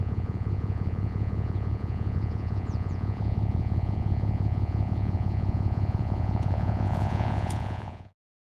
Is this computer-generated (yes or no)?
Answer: yes